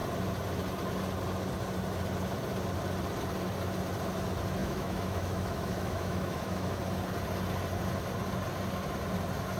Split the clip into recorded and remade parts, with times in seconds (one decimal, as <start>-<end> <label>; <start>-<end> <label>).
0.0-4.6 recorded; 4.6-6.8 remade; 6.8-9.6 recorded